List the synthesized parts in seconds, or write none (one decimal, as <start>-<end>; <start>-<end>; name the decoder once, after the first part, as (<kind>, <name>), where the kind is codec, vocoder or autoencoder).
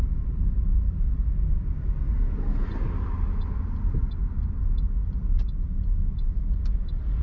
none